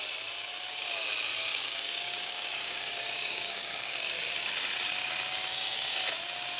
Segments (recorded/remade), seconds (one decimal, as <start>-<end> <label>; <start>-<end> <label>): 0.0-1.4 recorded; 1.4-4.5 remade; 4.5-5.5 recorded; 5.5-6.0 remade; 6.0-6.6 recorded